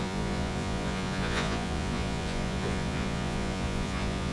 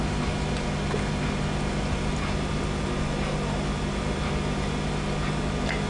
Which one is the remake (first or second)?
first